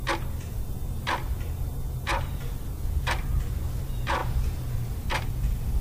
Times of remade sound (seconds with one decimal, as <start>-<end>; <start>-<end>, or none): 4.2-5.8